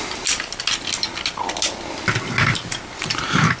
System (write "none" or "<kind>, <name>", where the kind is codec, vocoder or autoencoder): none